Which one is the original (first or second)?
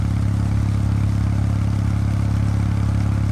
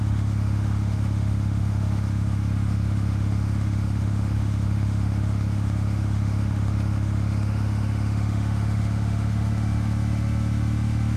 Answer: first